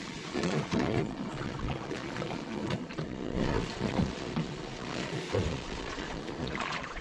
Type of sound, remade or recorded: remade